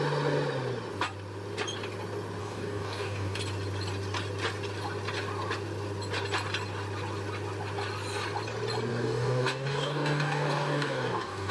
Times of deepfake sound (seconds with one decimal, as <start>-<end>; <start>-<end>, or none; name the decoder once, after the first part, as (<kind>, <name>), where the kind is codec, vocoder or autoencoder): 2.4-3.4 (codec, DAC); 8.9-11.5